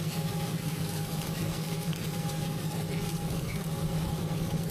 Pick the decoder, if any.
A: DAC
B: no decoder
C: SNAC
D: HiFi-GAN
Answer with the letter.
C